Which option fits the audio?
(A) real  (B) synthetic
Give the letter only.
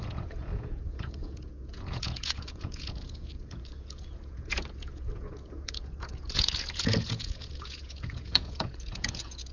B